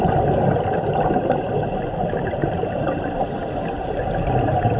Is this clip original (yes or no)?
yes